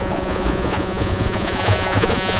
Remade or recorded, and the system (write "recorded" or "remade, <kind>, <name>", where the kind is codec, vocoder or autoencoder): remade, vocoder, Vocos